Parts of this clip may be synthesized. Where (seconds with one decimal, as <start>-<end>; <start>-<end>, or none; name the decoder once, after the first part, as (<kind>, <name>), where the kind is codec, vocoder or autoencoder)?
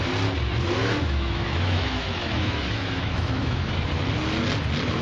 0.8-3.7 (autoencoder, DAC-VAE)